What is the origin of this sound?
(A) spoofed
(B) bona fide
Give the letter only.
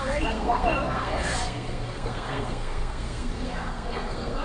A